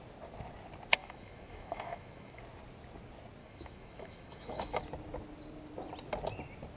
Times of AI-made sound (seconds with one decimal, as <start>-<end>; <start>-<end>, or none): 1.0-2.4; 3.4-4.8